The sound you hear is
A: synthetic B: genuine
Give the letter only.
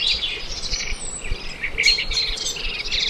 A